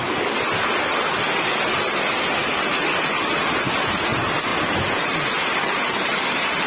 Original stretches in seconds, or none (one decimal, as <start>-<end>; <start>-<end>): 0.0-6.7